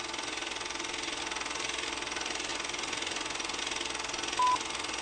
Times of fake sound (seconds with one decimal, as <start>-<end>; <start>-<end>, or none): 2.5-3.6